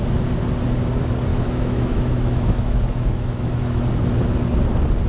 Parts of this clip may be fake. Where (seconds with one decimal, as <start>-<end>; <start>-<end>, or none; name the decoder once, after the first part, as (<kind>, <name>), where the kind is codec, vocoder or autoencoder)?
1.3-3.8 (autoencoder, DAC-VAE)